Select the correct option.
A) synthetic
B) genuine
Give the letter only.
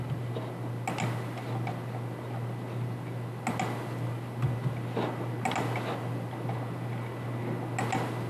B